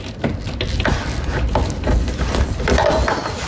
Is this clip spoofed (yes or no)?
no